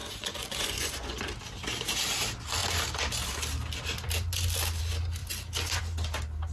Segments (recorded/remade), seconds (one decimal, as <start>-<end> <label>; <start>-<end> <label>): 0.0-1.2 remade; 1.2-6.5 recorded